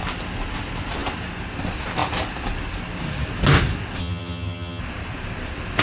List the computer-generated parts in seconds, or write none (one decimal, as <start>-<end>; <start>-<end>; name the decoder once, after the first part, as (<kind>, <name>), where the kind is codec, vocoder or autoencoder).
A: 4.0-4.8 (vocoder, HiFi-GAN)